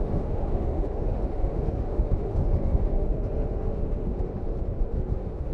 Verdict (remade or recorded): remade